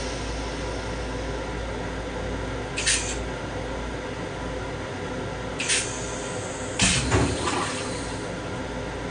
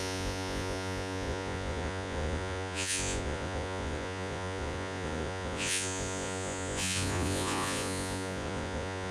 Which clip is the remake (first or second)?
second